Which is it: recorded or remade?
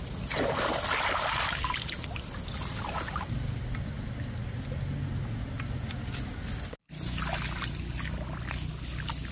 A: recorded